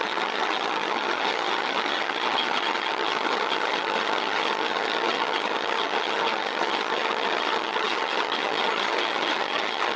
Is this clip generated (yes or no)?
yes